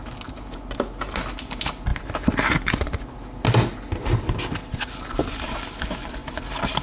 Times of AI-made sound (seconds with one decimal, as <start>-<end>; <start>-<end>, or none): none